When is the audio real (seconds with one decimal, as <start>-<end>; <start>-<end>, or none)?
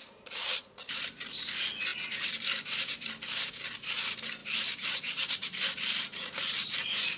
0.6-4.4